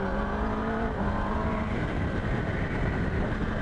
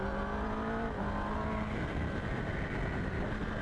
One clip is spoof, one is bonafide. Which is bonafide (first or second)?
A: second